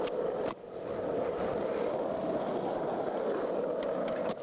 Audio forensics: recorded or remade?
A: recorded